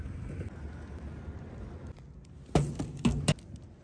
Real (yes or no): yes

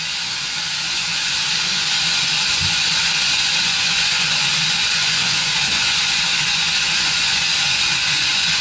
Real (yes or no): no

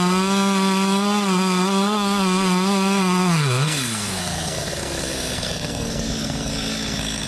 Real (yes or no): no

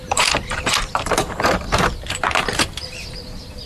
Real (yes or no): no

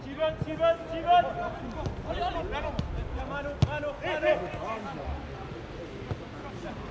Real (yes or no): yes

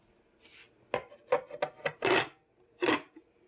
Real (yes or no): yes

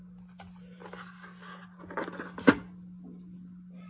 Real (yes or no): yes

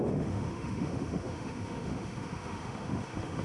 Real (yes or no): no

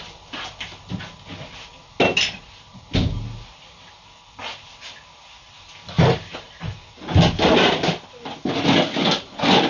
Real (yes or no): yes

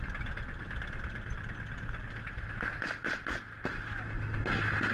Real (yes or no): yes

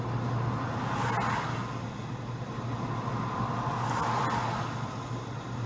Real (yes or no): yes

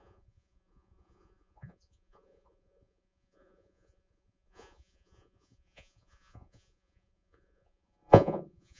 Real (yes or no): no